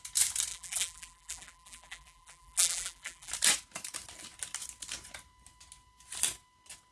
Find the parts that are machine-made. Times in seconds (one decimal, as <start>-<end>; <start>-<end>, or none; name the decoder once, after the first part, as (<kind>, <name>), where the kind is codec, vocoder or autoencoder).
0.5-3.3 (vocoder, BigVGAN v2)

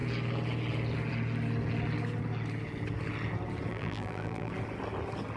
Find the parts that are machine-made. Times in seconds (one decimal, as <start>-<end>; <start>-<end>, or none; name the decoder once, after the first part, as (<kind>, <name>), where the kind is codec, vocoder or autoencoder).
3.7-4.5 (vocoder, BigVGAN v2)

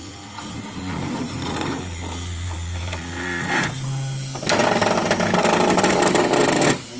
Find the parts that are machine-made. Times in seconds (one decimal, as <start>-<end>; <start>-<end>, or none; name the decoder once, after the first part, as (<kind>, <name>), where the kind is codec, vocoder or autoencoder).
0.0-3.7 (vocoder, Vocos)

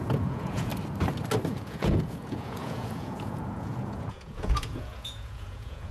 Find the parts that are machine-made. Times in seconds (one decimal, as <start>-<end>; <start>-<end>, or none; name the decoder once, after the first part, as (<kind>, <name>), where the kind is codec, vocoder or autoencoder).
0.0-0.7 (vocoder, Vocos); 1.5-5.9

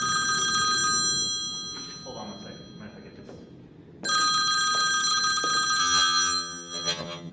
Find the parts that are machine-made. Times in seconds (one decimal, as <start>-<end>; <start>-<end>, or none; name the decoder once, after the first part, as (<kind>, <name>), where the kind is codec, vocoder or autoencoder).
5.8-7.3 (vocoder, HiFi-GAN)

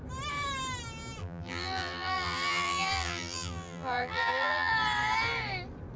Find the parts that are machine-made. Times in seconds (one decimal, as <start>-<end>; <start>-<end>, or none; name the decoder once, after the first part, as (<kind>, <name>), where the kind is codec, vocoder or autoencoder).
1.2-4.7 (vocoder, BigVGAN v2)

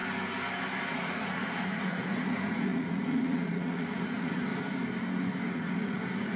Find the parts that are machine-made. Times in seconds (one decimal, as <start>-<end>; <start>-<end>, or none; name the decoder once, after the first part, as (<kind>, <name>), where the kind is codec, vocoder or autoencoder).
0.9-4.5 (vocoder, Vocos); 5.5-6.4

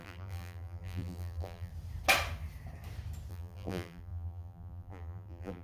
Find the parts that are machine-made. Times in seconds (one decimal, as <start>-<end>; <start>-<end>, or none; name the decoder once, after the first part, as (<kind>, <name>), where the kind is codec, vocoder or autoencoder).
0.0-1.7 (vocoder, BigVGAN v2); 3.3-5.6